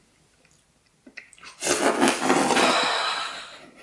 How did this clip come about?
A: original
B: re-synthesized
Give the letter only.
A